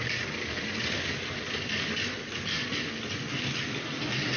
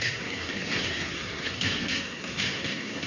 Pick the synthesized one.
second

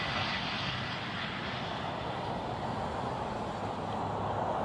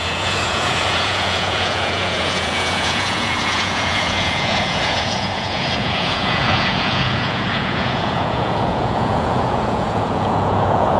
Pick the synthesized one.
second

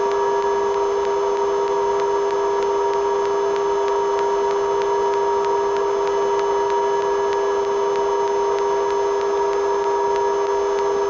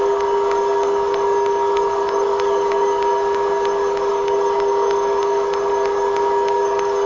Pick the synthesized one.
second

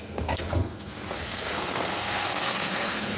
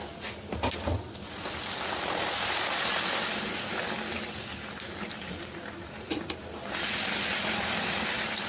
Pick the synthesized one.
first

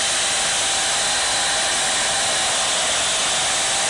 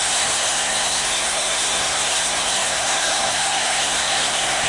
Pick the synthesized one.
second